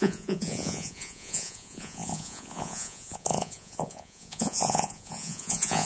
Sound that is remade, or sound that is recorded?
remade